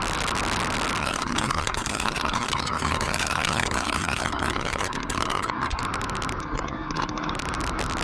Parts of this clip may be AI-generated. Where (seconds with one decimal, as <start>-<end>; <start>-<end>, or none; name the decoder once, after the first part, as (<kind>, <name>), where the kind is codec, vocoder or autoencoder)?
1.0-5.8 (codec, SNAC); 6.4-7.3